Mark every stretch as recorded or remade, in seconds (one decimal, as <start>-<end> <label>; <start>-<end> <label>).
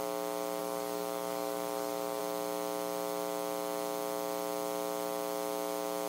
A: 0.0-0.6 recorded; 0.6-2.2 remade; 2.2-6.1 recorded